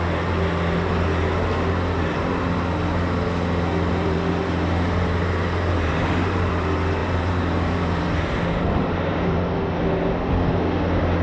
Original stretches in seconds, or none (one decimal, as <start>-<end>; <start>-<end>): 0.0-3.9; 6.5-7.0; 9.4-11.2